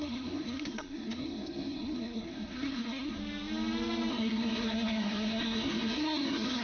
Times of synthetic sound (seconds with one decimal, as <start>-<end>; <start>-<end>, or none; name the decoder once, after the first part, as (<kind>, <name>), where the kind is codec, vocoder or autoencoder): 0.0-3.2 (codec, SNAC); 4.1-6.6